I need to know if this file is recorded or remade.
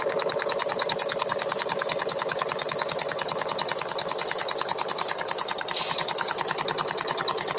recorded